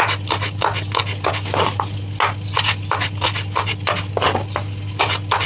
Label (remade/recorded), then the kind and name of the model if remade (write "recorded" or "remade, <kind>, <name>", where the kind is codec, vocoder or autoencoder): recorded